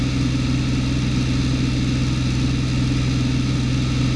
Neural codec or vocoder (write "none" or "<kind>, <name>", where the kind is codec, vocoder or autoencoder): none